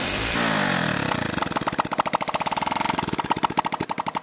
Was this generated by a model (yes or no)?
no